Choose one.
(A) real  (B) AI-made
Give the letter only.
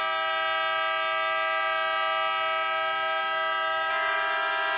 A